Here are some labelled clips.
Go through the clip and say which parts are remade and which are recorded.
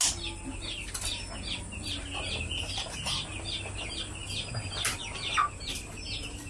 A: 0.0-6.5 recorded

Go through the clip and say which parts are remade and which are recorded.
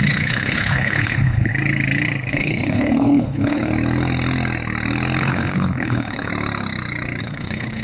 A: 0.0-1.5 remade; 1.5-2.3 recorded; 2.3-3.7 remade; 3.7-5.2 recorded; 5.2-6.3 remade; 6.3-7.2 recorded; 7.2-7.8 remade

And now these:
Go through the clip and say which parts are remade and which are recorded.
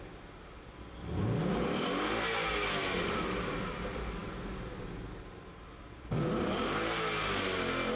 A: 0.0-8.0 recorded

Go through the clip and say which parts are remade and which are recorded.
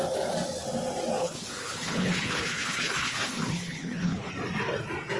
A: 0.0-1.2 recorded; 1.2-4.3 remade; 4.3-5.2 recorded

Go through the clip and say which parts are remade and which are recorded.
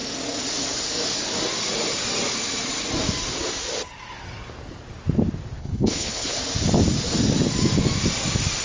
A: 0.0-5.6 recorded; 5.6-6.4 remade; 6.4-8.6 recorded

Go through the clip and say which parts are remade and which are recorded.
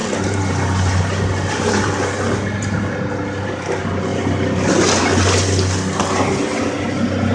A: 0.0-7.3 recorded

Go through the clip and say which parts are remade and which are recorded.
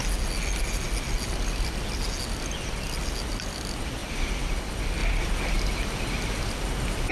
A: 0.0-7.1 recorded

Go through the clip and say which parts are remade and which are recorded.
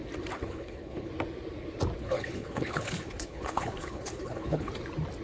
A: 0.0-0.4 recorded; 0.4-1.1 remade; 1.1-2.0 recorded; 2.0-4.7 remade; 4.7-5.2 recorded